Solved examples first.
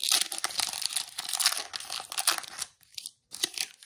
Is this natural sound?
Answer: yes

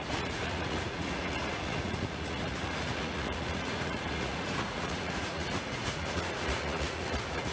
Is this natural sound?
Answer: no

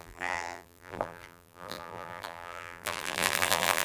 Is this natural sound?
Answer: no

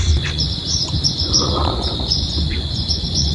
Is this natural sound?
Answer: no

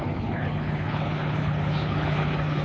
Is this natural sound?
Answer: no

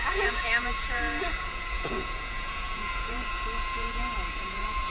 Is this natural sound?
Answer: no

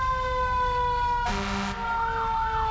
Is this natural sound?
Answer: yes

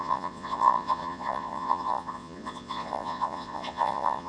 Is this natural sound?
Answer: no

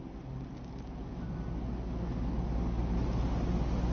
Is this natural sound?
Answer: yes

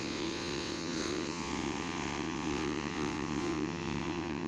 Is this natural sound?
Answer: no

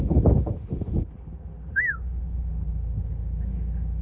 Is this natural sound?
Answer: no